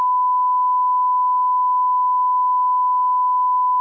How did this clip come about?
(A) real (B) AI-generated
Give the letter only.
A